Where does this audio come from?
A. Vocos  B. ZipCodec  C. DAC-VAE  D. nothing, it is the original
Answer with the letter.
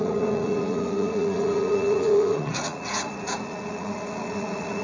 A